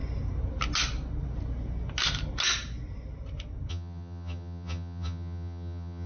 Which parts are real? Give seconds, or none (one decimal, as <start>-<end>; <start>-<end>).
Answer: 0.0-3.7